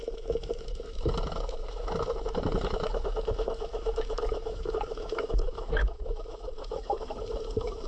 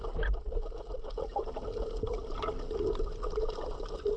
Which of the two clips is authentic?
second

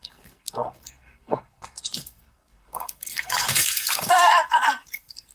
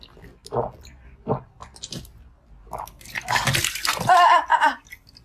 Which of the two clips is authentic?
second